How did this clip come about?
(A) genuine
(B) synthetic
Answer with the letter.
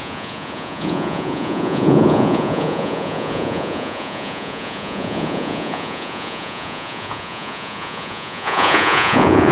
B